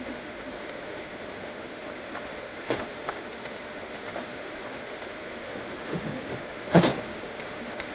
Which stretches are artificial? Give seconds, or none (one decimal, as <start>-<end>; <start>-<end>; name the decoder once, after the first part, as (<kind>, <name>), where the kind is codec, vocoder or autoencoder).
0.0-7.9 (autoencoder, DAC-VAE)